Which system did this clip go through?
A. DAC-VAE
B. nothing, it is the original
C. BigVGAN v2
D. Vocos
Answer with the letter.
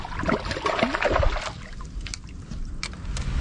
B